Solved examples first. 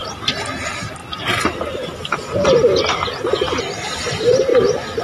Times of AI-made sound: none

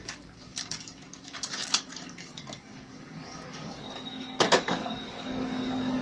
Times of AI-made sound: 0.0-6.0 (codec, DAC)

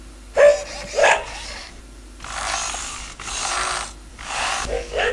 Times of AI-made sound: 1.0-1.8 (codec, DAC); 2.8-3.5; 4.1-5.1